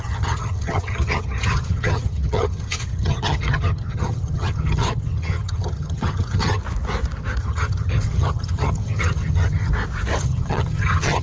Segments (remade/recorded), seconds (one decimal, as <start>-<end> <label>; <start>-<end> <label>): 0.0-6.6 remade; 6.6-7.4 recorded; 7.4-9.7 remade; 9.7-10.2 recorded; 10.2-11.2 remade

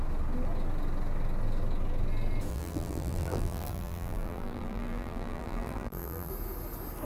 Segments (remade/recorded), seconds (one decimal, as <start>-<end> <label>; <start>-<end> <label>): 0.0-2.5 recorded; 2.5-6.3 remade; 6.3-7.0 recorded

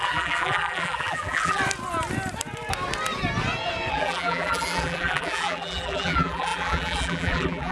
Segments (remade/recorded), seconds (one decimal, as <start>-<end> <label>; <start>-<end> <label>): 0.0-1.6 remade; 1.6-3.9 recorded; 3.9-7.7 remade

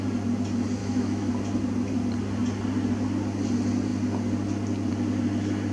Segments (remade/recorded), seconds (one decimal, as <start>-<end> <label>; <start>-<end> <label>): 0.0-0.8 recorded; 0.8-1.3 remade; 1.3-5.7 recorded